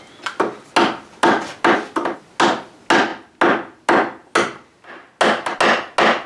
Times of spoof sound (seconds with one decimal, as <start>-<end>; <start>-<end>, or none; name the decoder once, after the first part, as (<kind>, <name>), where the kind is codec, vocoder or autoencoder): none